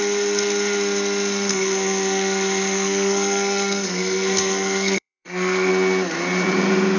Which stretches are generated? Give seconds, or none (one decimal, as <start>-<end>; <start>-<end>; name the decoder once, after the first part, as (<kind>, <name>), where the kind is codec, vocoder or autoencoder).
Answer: 1.5-5.7 (codec, SNAC)

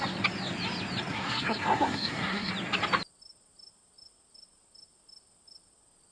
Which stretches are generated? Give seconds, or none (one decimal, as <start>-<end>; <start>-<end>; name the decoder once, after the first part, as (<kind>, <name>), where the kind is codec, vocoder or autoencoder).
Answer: 1.1-2.5 (codec, SNAC)

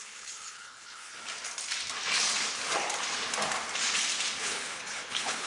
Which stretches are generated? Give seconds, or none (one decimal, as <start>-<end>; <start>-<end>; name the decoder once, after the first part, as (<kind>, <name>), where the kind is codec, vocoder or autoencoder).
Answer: 0.0-1.1 (codec, HILCodec); 4.4-5.5

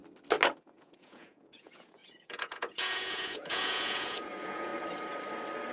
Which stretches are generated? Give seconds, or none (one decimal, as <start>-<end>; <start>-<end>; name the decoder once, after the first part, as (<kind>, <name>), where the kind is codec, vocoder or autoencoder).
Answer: 0.6-4.7 (vocoder, Vocos)

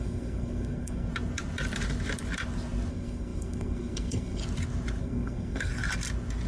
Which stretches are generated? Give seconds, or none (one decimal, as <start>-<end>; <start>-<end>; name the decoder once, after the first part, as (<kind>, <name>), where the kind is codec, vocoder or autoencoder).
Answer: 0.0-1.1 (codec, SNAC); 2.9-4.4; 5.0-5.7

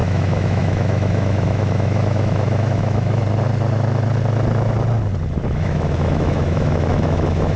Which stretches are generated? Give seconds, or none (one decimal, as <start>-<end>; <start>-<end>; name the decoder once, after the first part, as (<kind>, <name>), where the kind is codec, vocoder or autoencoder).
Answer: 0.0-3.2 (autoencoder, DAC-VAE); 5.5-7.6

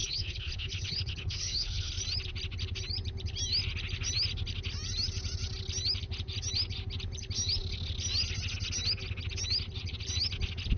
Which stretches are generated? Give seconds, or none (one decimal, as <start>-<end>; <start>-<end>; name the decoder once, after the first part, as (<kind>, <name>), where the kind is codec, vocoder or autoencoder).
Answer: 0.0-1.9 (codec, HILCodec)